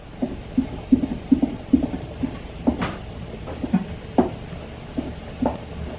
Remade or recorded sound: recorded